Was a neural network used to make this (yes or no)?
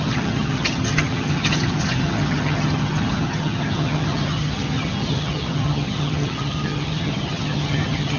yes